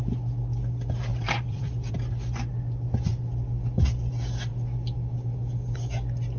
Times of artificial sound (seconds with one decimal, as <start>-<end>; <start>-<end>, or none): 1.1-1.9